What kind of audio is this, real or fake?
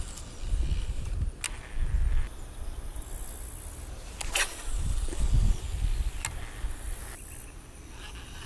real